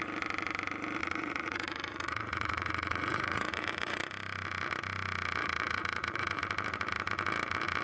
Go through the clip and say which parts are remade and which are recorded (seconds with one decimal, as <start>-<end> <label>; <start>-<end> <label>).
0.0-1.0 recorded; 1.0-4.0 remade; 4.0-5.4 recorded; 5.4-6.4 remade; 6.4-7.8 recorded